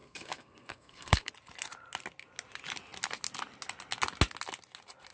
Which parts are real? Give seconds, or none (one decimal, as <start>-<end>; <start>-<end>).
1.3-5.1